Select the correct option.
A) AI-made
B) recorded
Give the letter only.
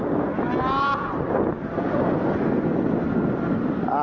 B